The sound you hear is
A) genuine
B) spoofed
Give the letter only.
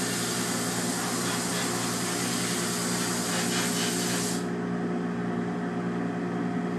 A